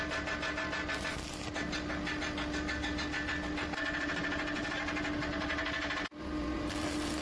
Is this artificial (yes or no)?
no